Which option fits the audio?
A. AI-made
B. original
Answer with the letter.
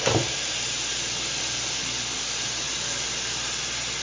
B